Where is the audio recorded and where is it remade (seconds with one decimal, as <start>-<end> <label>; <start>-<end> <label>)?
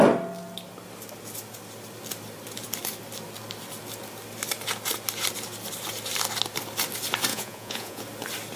0.0-7.3 recorded; 7.3-8.0 remade; 8.0-8.6 recorded